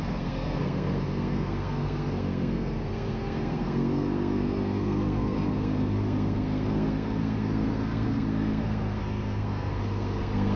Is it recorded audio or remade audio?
remade